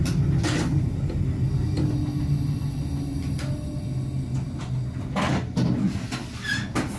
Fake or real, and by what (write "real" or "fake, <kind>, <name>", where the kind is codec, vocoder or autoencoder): real